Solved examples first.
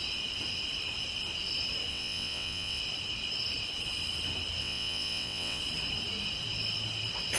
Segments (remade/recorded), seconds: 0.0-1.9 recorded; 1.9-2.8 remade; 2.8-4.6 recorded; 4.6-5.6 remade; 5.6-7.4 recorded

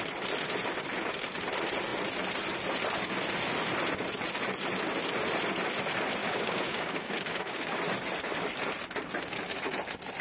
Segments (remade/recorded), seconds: 0.0-6.2 recorded; 6.2-7.8 remade; 7.8-10.2 recorded